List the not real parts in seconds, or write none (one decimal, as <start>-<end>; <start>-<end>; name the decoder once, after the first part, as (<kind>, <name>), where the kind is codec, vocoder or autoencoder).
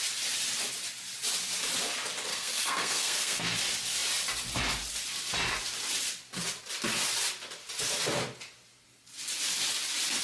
2.3-3.6 (codec, SNAC)